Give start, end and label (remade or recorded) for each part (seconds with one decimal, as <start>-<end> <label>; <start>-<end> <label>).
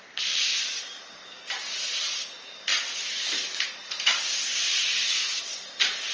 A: 0.0-0.5 recorded; 0.5-2.3 remade; 2.3-2.7 recorded; 2.7-3.7 remade; 3.7-4.5 recorded; 4.5-5.3 remade; 5.3-6.1 recorded